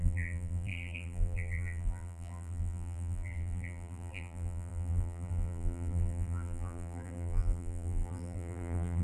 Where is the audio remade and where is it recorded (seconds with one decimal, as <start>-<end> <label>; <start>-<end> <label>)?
0.0-9.0 remade